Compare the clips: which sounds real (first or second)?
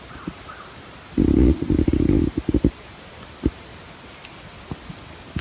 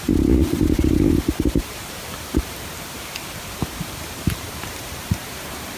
first